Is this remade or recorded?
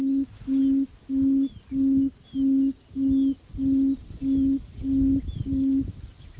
recorded